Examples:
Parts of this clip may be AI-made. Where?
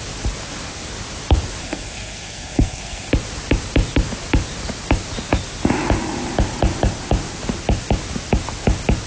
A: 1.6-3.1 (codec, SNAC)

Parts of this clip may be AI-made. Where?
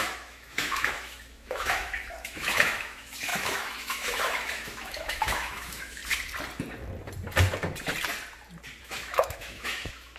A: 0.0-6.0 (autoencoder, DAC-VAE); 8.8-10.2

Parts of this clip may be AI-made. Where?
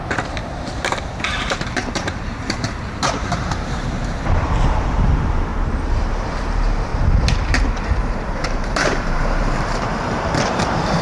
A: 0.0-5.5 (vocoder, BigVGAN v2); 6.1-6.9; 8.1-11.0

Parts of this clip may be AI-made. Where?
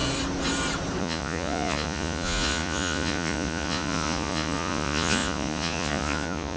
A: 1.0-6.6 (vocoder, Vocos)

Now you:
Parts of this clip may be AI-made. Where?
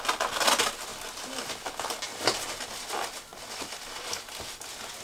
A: 2.1-2.7 (vocoder, BigVGAN v2)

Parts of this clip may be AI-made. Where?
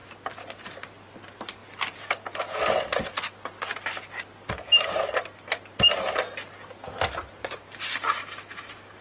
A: none